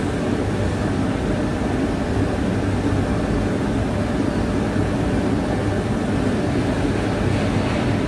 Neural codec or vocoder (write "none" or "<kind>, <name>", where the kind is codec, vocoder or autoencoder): none